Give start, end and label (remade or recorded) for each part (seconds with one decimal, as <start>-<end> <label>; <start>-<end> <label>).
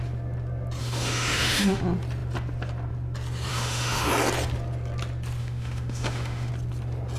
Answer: 0.0-0.8 recorded; 0.8-1.8 remade; 1.8-3.5 recorded; 3.5-4.1 remade; 4.1-5.4 recorded; 5.4-6.5 remade; 6.5-7.2 recorded